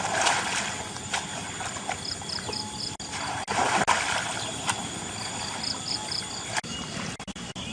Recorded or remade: recorded